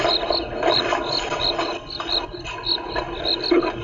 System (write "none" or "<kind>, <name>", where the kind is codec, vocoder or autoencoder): none